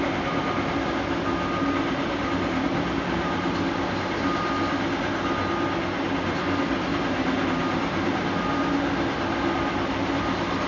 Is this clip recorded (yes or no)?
yes